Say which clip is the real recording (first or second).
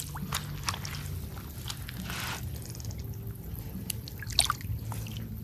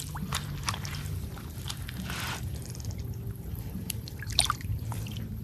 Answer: first